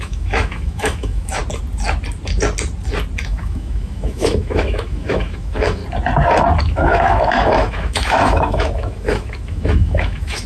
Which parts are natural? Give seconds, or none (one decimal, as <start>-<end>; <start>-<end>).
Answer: 1.4-3.2; 5.8-6.6

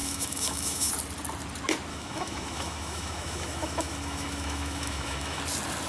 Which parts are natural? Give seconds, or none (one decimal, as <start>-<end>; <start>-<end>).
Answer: 0.9-1.9; 5.4-5.9

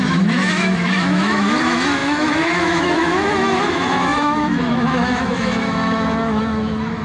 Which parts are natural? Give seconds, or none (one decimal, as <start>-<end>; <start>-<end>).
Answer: none

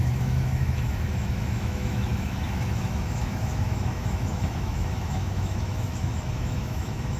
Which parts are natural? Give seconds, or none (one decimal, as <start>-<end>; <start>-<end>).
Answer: none

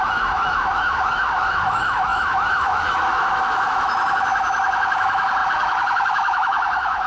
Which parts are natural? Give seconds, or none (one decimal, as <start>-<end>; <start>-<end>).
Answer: none

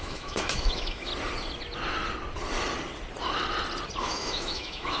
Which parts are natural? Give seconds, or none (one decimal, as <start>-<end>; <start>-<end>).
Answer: 1.1-4.0